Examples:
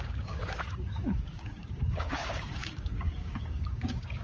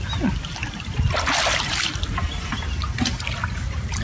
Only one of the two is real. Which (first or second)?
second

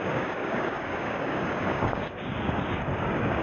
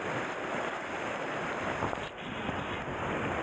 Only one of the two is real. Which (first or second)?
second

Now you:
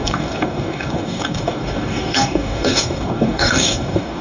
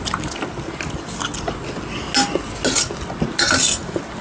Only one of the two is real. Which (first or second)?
second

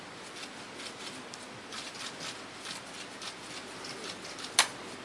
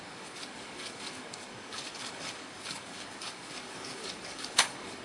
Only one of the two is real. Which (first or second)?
first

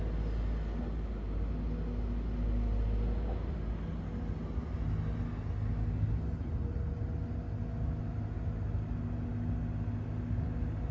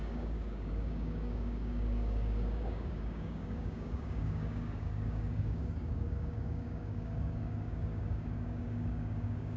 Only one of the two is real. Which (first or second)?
first